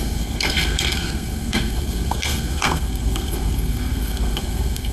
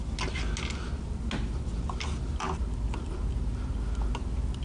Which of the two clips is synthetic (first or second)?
first